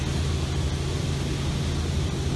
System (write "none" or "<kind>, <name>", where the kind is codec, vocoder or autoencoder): none